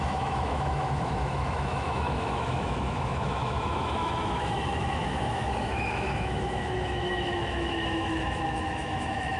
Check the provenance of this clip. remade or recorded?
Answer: remade